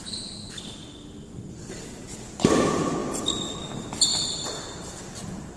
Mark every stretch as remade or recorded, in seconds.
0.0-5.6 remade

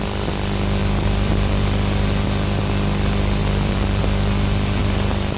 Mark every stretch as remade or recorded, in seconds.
0.0-0.8 recorded; 0.8-1.6 remade; 1.6-3.4 recorded; 3.4-4.0 remade; 4.0-4.8 recorded; 4.8-5.4 remade

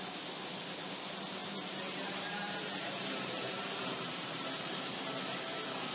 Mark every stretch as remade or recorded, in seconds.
0.0-1.4 recorded; 1.4-4.9 remade; 4.9-5.9 recorded